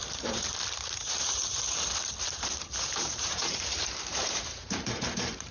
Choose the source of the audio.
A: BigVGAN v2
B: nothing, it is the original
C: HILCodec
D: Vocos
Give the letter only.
A